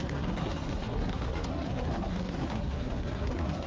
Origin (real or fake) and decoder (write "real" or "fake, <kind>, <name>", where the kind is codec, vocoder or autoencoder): fake, codec, SNAC